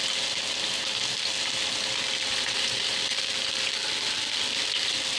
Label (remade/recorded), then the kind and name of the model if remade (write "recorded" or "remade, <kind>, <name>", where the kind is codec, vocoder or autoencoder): recorded